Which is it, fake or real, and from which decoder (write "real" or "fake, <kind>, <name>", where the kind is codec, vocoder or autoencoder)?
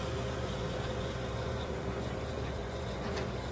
fake, vocoder, Vocos